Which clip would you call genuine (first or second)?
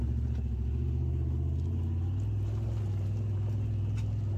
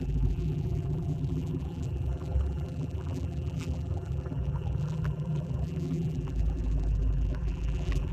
first